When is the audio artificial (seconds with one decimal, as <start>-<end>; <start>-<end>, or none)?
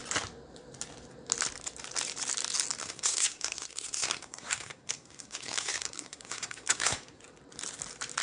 2.8-7.2